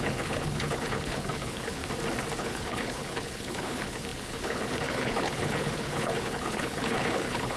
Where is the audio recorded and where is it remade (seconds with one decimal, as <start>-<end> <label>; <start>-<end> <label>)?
0.0-1.8 remade; 1.8-2.4 recorded; 2.4-7.6 remade